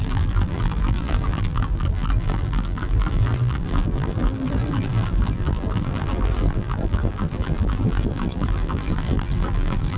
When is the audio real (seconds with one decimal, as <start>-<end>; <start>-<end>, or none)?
none